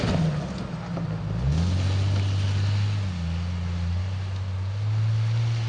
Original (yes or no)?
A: yes